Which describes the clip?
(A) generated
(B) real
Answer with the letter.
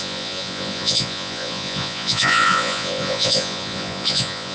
A